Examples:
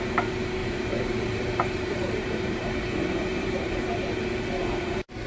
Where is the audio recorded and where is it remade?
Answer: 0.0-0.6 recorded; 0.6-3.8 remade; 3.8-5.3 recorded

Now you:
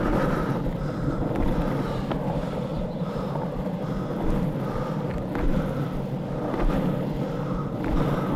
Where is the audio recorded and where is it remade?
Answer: 0.0-2.7 recorded; 2.7-3.9 remade; 3.9-8.4 recorded